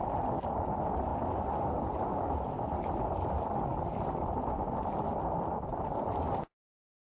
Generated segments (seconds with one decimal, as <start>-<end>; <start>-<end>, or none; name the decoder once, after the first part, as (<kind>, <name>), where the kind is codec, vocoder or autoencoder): none